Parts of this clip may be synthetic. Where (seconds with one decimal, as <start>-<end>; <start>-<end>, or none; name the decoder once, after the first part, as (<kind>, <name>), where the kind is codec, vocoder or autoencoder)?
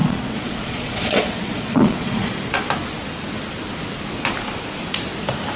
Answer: 0.0-2.3 (vocoder, Vocos)